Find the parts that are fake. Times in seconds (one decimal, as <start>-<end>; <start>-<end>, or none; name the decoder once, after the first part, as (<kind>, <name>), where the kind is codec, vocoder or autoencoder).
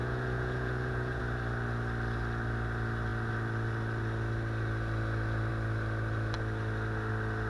0.0-1.2 (vocoder, Vocos)